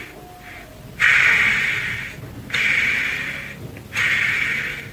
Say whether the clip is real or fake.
real